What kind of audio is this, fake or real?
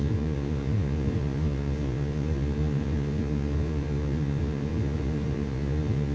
fake